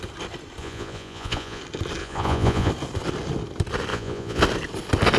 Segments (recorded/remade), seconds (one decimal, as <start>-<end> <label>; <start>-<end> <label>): 0.0-0.6 recorded; 0.6-1.6 remade; 1.6-2.0 recorded; 2.0-2.7 remade; 2.7-3.9 recorded; 3.9-4.4 remade; 4.4-5.2 recorded